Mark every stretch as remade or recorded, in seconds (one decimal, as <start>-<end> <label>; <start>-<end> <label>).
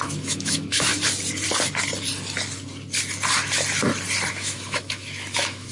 0.0-0.9 remade; 0.9-4.3 recorded; 4.3-5.7 remade